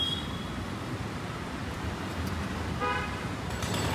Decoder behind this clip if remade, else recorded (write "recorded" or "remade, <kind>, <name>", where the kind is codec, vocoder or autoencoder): remade, vocoder, BigVGAN v2